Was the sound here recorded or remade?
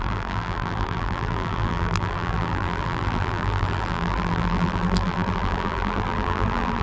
remade